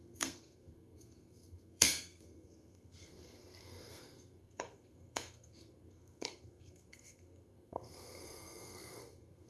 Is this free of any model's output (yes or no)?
no